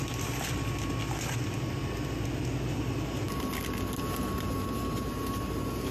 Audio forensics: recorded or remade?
recorded